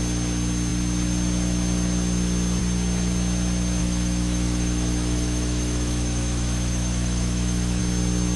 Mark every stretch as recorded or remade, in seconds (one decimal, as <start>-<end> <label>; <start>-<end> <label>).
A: 0.0-3.8 recorded; 3.8-7.8 remade; 7.8-8.4 recorded